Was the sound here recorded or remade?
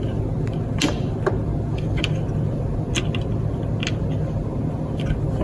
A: recorded